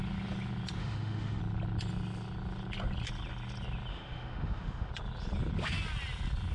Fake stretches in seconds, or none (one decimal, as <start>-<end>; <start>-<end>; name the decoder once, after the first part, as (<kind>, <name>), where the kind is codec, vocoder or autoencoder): 0.8-1.4 (autoencoder, DAC-VAE); 3.9-4.9